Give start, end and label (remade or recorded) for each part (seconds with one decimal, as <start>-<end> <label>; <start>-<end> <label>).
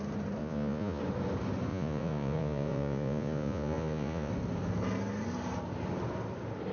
0.0-0.4 recorded; 0.4-1.0 remade; 1.0-1.7 recorded; 1.7-4.3 remade; 4.3-6.7 recorded